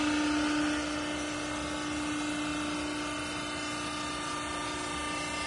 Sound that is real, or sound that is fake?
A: real